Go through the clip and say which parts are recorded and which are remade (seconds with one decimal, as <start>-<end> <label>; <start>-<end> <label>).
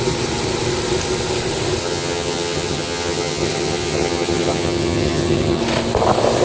0.0-1.8 recorded; 1.8-5.6 remade; 5.6-6.4 recorded